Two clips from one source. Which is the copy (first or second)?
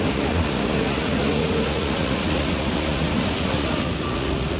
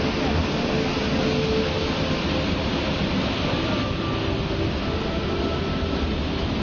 first